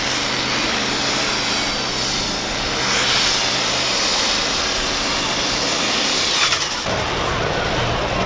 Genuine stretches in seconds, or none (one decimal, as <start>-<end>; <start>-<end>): 0.0-4.1; 7.8-8.3